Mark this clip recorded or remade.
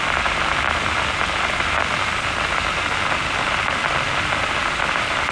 recorded